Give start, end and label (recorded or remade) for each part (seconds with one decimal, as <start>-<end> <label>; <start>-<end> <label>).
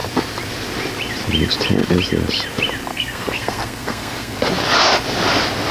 0.0-2.9 recorded; 2.9-4.4 remade; 4.4-5.7 recorded